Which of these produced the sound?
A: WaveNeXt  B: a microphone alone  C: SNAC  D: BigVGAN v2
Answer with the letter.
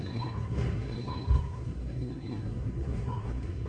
C